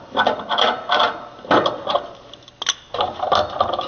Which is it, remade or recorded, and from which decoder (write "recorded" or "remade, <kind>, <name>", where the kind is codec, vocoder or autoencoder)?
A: recorded